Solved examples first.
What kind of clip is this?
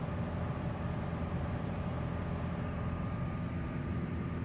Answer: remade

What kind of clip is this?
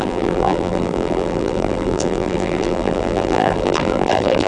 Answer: remade